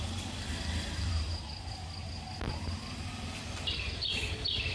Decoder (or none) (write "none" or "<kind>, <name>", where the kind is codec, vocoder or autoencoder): none